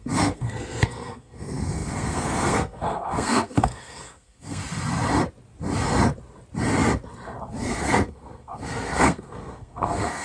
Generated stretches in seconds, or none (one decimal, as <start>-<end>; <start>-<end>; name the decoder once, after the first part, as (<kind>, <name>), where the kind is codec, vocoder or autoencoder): 0.0-4.6 (codec, SNAC); 7.4-10.2